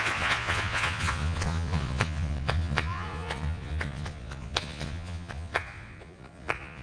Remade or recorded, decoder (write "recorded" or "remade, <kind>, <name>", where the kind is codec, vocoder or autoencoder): remade, vocoder, Vocos